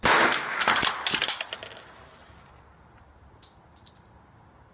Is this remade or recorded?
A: recorded